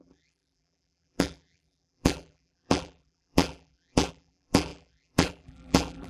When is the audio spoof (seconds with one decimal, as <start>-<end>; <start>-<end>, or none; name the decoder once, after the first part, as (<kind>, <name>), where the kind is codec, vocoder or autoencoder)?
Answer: 0.0-6.1 (vocoder, BigVGAN v2)